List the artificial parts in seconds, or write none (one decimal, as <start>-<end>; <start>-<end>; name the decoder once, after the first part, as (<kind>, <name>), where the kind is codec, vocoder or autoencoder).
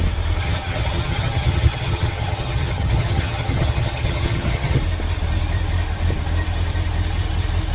0.4-4.8 (vocoder, HiFi-GAN)